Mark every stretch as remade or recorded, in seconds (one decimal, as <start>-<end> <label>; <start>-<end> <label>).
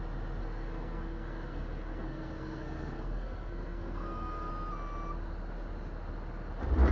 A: 0.0-0.4 recorded; 0.4-4.5 remade; 4.5-6.9 recorded